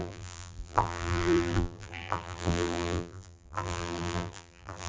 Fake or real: fake